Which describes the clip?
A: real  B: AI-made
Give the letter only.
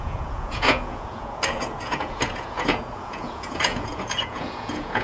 B